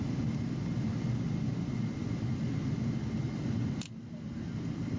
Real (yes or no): yes